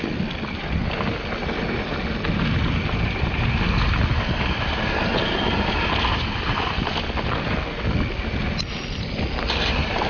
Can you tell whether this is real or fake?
real